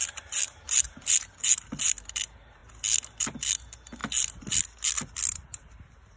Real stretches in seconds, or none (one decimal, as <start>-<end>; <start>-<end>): 0.0-6.2